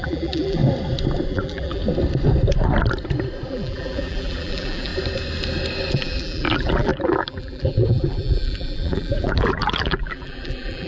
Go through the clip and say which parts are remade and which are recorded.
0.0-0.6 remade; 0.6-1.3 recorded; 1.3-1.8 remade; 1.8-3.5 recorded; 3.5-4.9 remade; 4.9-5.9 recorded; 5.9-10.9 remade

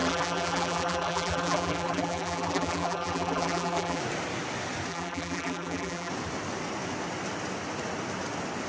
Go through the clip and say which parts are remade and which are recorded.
0.0-4.0 remade; 4.0-4.9 recorded; 4.9-6.1 remade; 6.1-8.7 recorded

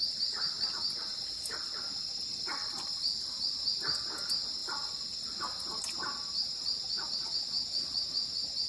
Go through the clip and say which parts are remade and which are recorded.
0.0-2.3 recorded; 2.3-3.5 remade; 3.5-8.7 recorded

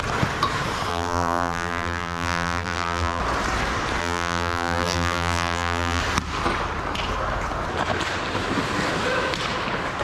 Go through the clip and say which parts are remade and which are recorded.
0.0-0.9 recorded; 0.9-3.2 remade; 3.2-4.0 recorded; 4.0-6.0 remade; 6.0-10.0 recorded

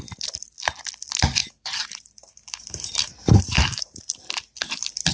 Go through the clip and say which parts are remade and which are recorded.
0.0-1.4 recorded; 1.4-4.0 remade; 4.0-5.1 recorded

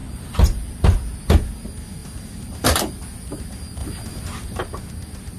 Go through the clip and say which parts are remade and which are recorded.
0.0-1.5 remade; 1.5-2.0 recorded; 2.0-3.0 remade; 3.0-3.8 recorded; 3.8-4.6 remade; 4.6-5.4 recorded